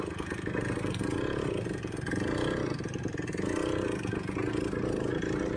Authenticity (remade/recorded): recorded